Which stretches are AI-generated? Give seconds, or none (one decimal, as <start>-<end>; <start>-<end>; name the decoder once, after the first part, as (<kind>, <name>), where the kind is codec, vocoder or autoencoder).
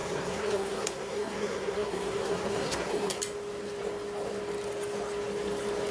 0.0-3.2 (codec, SNAC)